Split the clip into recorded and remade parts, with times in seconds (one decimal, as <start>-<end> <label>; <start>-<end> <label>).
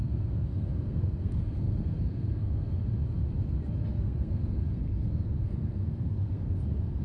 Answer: 0.0-2.8 remade; 2.8-4.0 recorded; 4.0-7.0 remade